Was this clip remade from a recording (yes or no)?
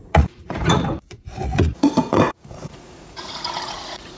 yes